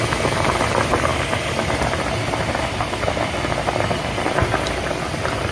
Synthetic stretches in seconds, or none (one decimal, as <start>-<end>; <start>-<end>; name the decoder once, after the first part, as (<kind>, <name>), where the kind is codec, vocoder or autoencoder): none